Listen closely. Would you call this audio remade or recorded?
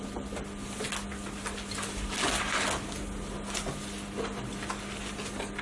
recorded